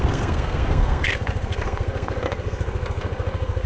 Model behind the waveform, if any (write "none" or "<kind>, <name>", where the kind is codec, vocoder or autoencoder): codec, SNAC